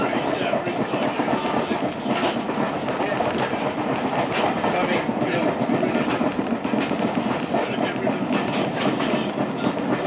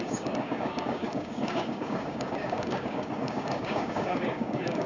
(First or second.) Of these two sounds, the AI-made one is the second